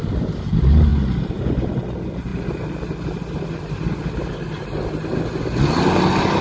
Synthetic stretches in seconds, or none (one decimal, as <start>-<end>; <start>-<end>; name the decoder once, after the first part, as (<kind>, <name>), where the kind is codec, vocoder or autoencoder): none